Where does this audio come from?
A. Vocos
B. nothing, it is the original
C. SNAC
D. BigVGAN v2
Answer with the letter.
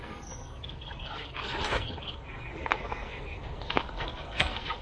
C